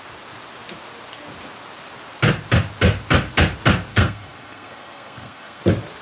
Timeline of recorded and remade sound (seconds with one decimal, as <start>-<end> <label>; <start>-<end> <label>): 0.0-3.9 recorded; 3.9-5.6 remade; 5.6-6.0 recorded